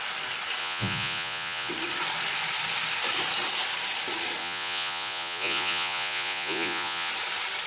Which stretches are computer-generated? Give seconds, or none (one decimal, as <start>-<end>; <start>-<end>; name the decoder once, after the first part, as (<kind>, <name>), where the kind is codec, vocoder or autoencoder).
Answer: 0.6-1.7 (vocoder, Vocos); 4.4-7.1